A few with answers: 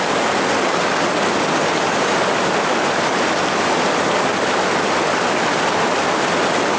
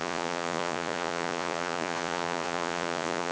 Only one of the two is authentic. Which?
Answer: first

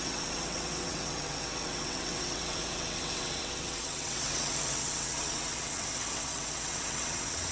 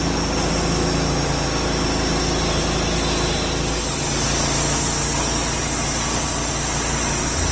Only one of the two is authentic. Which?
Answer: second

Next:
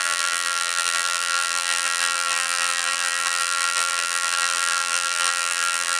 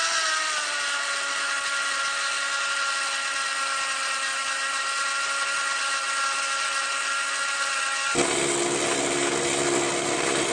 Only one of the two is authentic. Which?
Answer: second